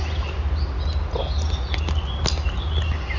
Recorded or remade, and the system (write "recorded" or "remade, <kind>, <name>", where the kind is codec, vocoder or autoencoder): recorded